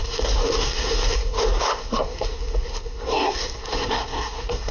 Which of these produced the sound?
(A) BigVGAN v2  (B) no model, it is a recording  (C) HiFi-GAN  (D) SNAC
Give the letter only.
D